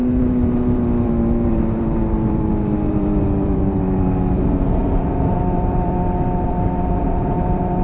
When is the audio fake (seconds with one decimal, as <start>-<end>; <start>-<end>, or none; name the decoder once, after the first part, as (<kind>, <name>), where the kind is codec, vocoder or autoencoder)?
0.0-4.8 (vocoder, BigVGAN v2); 5.3-7.8